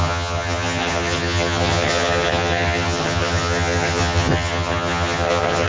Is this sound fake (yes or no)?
yes